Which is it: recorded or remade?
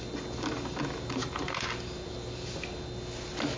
recorded